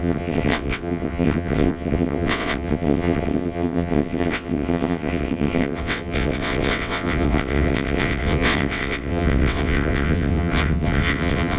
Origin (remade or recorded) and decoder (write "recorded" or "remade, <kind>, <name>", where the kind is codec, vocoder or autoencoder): remade, vocoder, WaveNeXt